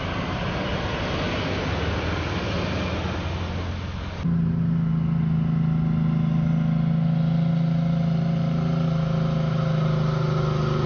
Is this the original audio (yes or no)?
yes